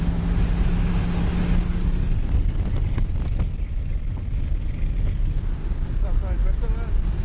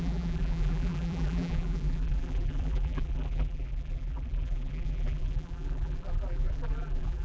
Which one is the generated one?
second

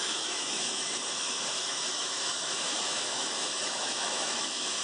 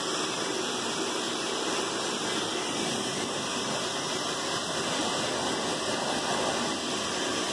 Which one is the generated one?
first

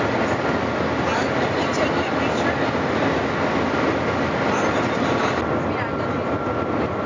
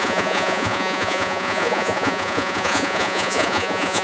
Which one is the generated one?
second